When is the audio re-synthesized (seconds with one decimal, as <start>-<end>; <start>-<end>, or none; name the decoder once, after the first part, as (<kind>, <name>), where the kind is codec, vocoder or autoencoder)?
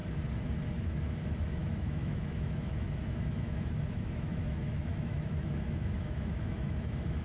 0.8-7.2 (autoencoder, DAC-VAE)